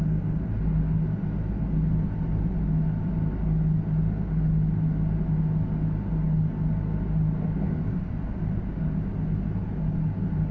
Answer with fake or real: real